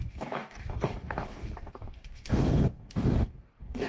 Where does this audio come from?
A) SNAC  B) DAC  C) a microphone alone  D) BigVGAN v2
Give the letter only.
B